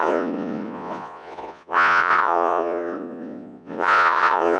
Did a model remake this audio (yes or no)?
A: yes